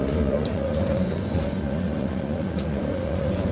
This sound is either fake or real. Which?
fake